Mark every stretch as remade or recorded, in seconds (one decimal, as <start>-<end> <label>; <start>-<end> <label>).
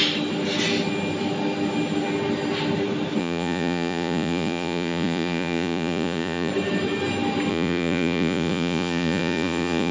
0.0-3.2 recorded; 3.2-6.5 remade; 6.5-7.5 recorded; 7.5-9.9 remade